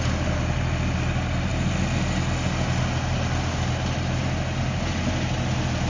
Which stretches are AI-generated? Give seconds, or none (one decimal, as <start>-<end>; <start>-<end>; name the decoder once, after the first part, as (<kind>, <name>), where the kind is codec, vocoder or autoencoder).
none